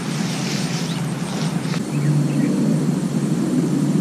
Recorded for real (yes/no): yes